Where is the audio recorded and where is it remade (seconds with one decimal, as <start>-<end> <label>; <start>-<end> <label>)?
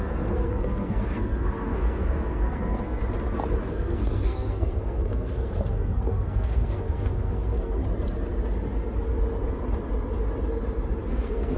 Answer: 0.0-3.0 remade; 3.0-3.7 recorded; 3.7-7.8 remade; 7.8-11.1 recorded; 11.1-11.6 remade